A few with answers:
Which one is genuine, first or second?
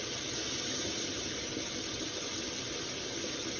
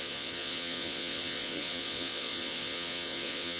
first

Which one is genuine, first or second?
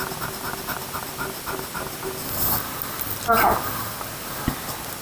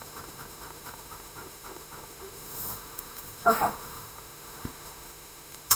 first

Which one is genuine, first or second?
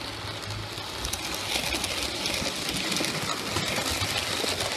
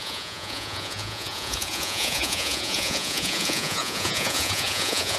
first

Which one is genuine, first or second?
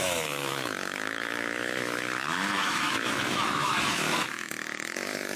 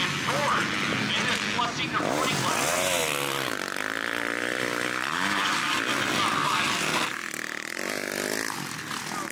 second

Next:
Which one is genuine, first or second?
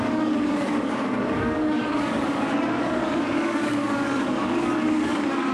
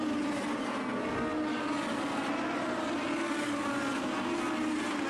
second